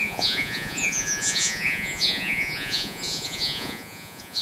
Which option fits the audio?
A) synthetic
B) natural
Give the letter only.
A